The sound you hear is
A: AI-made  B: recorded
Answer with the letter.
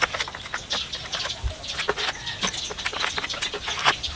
B